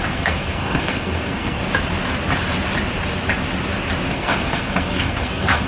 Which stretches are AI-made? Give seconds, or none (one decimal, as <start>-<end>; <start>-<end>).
0.0-1.6; 4.1-5.7